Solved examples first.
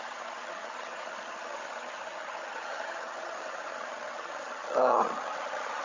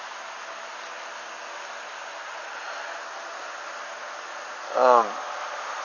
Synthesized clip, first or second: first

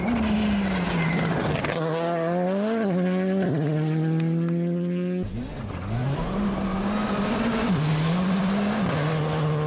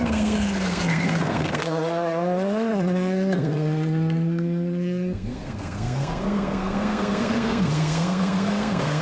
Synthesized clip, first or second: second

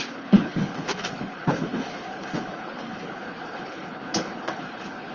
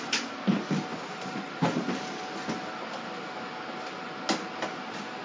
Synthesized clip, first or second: first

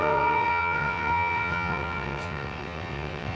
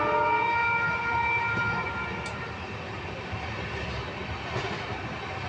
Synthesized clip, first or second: first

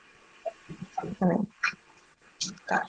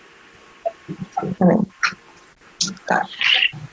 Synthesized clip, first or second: first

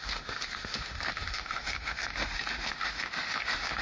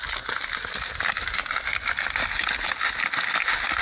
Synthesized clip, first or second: first